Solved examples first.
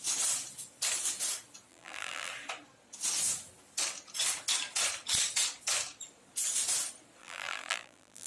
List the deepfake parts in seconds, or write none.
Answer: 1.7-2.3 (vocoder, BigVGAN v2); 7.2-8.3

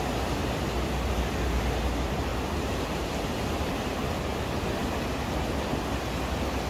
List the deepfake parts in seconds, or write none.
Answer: 2.3-4.1 (vocoder, BigVGAN v2); 4.8-5.4

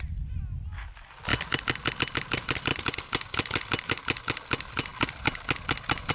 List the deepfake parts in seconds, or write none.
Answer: 0.0-1.3 (vocoder, BigVGAN v2); 2.1-4.9

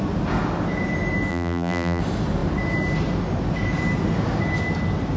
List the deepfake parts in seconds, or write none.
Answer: 1.3-2.0 (vocoder, BigVGAN v2)

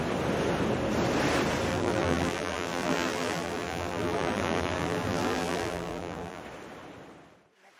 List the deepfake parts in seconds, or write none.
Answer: 1.7-6.4 (vocoder, BigVGAN v2)

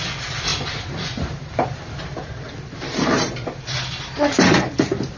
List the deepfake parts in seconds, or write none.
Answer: 0.5-3.6 (vocoder, BigVGAN v2)

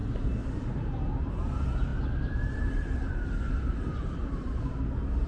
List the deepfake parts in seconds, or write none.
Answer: 1.9-2.6 (vocoder, BigVGAN v2); 4.2-4.7

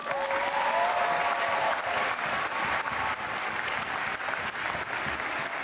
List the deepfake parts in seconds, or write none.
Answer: none